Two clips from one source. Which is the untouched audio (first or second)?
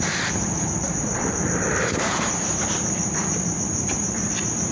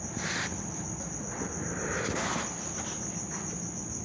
second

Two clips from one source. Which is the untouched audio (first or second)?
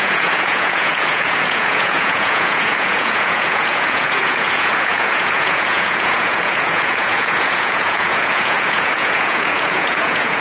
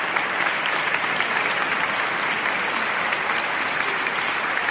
second